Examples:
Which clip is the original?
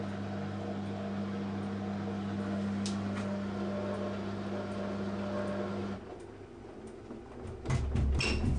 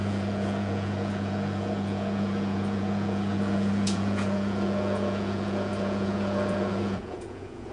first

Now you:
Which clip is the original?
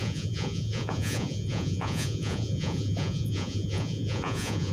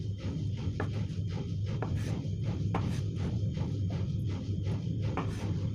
second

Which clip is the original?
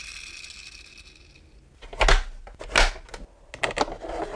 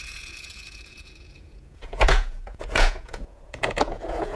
first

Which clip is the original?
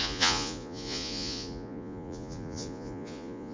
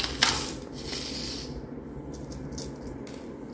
second